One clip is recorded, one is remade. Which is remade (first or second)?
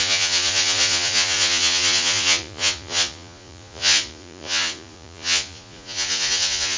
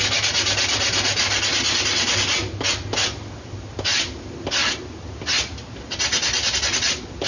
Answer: first